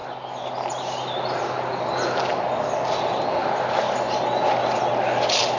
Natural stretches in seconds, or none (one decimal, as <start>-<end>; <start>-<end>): 0.0-5.6